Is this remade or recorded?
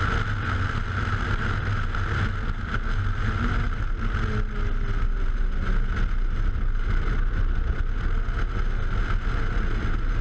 recorded